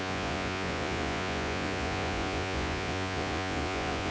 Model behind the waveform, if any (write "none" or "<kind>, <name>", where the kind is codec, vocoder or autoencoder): vocoder, Vocos